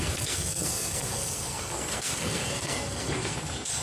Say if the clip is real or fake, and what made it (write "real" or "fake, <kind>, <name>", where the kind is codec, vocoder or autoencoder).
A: fake, codec, SNAC